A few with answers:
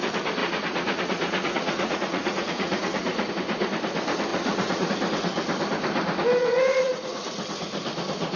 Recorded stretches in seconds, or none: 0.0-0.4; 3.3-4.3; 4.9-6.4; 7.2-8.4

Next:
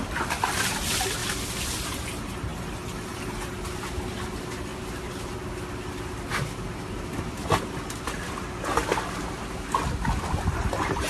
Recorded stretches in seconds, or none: 0.0-11.1

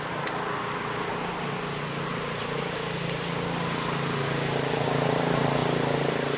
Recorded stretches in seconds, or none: 0.0-6.4

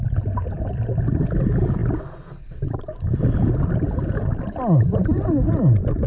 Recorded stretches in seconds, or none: 0.0-6.1